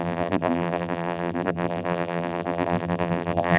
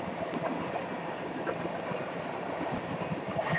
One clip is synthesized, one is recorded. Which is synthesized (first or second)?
first